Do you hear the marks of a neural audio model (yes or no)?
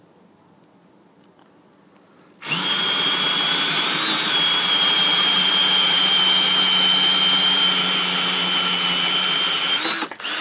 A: no